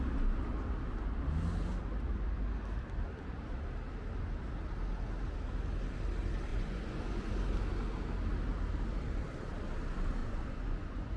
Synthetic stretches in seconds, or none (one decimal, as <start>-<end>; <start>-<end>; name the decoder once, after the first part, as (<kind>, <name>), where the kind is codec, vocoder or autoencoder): 6.5-7.3 (vocoder, Vocos); 10.2-11.2